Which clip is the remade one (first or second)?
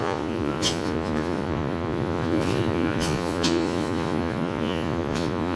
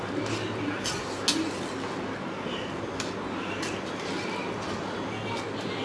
first